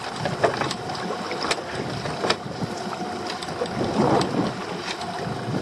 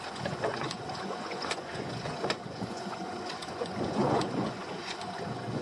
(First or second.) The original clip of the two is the first